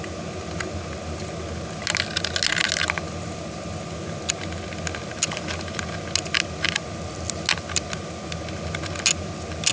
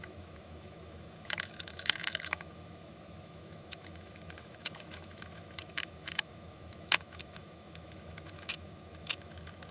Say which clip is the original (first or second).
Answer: first